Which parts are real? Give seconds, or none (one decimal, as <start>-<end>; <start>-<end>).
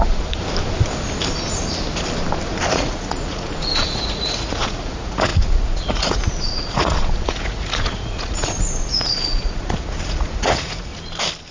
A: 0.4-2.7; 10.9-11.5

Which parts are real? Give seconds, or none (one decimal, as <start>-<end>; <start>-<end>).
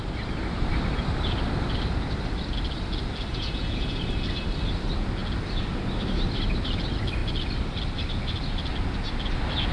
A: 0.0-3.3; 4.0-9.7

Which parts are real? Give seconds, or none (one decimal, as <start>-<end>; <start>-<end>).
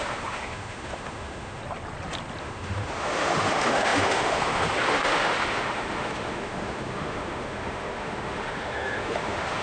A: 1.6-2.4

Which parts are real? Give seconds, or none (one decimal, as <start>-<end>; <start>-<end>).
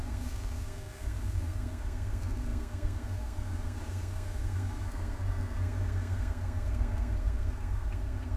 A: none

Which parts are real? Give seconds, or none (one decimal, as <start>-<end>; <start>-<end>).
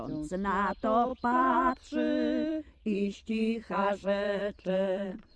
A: 0.0-1.1; 1.7-2.5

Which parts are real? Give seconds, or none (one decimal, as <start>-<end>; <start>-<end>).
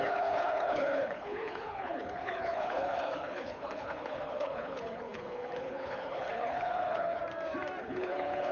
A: 7.2-7.8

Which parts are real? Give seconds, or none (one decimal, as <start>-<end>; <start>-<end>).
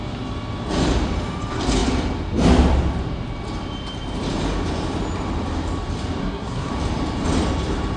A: 0.0-6.2; 6.7-8.0